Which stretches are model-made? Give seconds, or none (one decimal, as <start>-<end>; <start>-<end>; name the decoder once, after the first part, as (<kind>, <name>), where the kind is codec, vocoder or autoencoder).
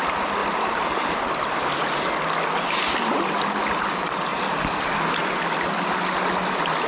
none